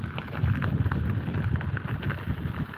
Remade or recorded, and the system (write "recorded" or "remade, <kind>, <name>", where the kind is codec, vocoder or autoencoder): recorded